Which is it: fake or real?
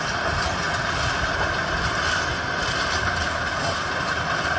real